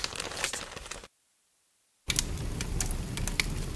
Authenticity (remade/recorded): recorded